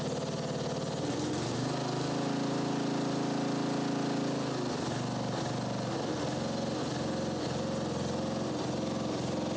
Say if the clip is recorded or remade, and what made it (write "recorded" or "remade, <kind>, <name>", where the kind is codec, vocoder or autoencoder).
recorded